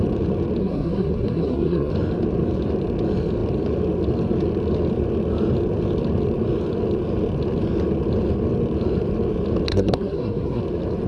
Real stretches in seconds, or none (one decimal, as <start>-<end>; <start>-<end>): 0.0-0.6; 1.9-9.7; 10.6-11.1